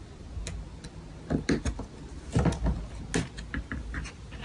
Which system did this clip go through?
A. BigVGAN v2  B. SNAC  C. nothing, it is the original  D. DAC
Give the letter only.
C